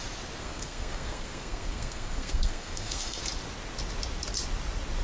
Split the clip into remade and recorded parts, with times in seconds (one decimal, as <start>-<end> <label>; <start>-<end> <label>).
0.0-0.4 recorded; 0.4-3.2 remade; 3.2-5.0 recorded